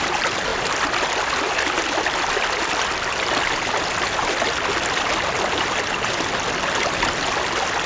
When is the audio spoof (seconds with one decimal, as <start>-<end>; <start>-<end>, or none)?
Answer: none